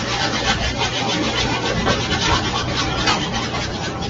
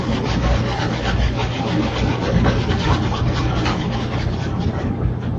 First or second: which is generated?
second